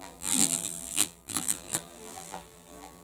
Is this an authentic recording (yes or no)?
no